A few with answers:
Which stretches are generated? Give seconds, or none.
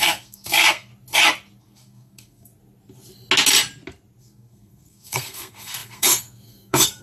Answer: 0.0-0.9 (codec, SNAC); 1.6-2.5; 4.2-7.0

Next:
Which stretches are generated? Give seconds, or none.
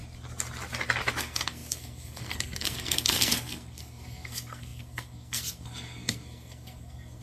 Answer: 1.2-7.2 (codec, SNAC)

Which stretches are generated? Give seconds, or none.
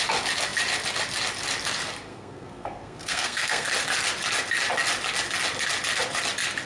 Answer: 2.1-3.7 (codec, SNAC)